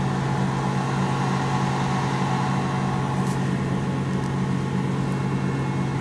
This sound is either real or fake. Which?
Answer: real